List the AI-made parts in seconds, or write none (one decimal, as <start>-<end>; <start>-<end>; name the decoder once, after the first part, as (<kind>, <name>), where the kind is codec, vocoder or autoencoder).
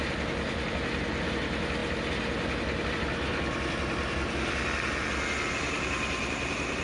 none